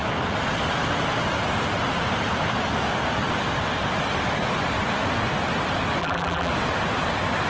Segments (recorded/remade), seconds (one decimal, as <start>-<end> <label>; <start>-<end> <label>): 0.0-6.0 recorded; 6.0-6.5 remade; 6.5-7.5 recorded